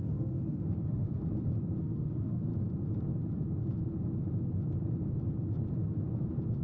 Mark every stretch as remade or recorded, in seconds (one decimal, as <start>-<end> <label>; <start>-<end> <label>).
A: 0.0-1.2 remade; 1.2-1.8 recorded; 1.8-2.5 remade; 2.5-6.6 recorded